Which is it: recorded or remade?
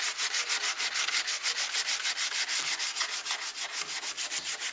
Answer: recorded